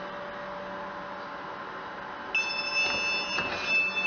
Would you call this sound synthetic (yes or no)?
no